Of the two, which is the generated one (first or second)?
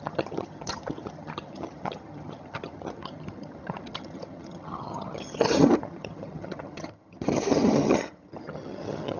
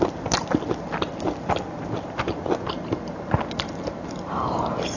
first